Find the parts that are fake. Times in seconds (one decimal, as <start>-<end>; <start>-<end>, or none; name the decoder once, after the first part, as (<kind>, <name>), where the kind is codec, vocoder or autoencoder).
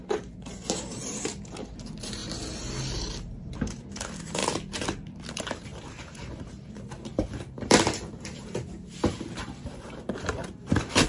0.0-2.2 (vocoder, BigVGAN v2); 2.8-4.4; 5.3-11.1